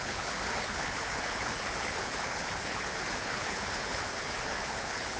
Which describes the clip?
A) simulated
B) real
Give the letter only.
A